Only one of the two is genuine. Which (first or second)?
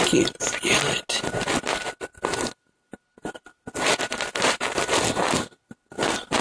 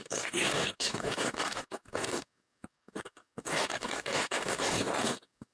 first